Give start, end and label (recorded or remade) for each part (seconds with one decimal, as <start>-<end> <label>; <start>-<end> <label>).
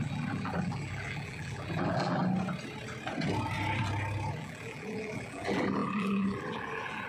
0.0-2.2 remade; 2.2-4.3 recorded; 4.3-7.1 remade